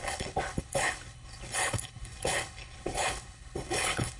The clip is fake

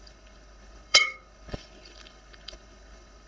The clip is fake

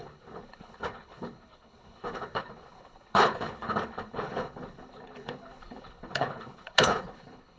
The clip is fake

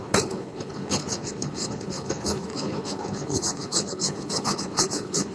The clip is fake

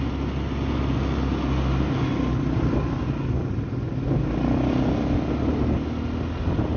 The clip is real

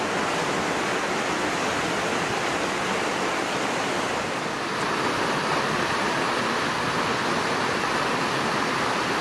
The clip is real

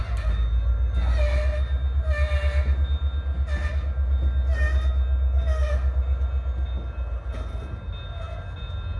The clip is real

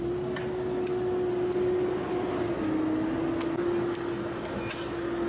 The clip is real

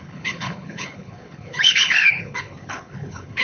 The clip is fake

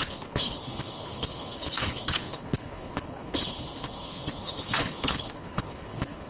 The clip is fake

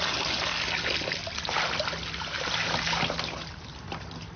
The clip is real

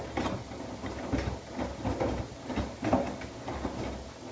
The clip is real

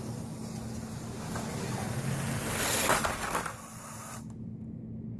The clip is real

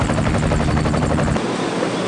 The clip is real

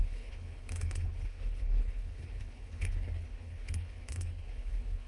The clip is fake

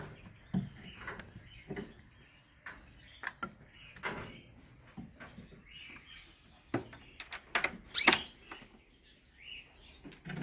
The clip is real